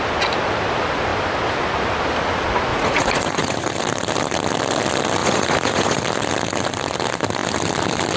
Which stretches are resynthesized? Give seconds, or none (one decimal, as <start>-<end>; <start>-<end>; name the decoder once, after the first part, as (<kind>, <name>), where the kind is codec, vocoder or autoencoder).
2.7-3.7 (vocoder, Vocos); 5.2-6.0